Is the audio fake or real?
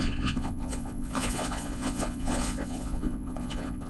fake